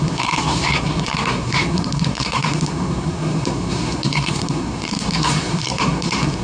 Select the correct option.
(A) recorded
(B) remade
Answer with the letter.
B